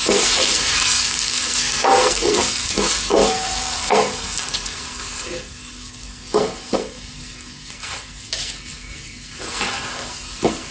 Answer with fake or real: fake